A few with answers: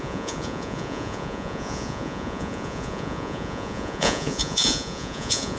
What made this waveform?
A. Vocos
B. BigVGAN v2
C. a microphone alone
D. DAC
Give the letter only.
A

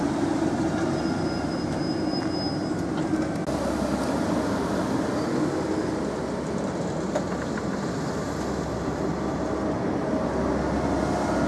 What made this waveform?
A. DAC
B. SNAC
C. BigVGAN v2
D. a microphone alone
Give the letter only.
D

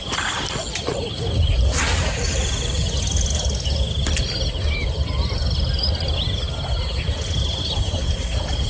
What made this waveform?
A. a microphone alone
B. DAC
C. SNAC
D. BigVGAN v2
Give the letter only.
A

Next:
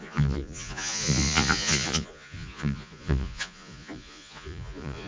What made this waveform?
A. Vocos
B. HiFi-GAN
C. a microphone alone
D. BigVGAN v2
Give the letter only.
A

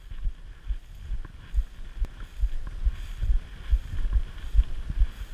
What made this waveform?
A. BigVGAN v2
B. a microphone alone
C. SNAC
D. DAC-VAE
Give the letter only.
B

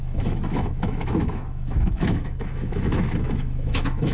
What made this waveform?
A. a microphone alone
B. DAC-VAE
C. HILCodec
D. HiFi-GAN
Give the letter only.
B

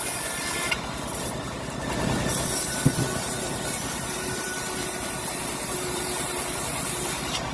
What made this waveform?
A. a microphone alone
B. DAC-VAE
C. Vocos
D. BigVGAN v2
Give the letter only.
A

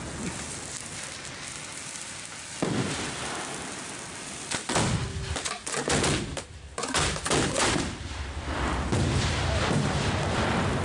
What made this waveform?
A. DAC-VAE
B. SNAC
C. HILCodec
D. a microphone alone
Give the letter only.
D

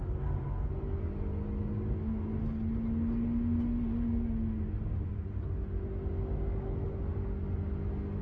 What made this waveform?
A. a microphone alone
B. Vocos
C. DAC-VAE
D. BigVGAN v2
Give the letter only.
A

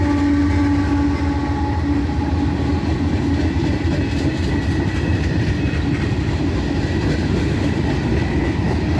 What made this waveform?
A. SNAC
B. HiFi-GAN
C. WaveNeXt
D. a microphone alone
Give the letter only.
D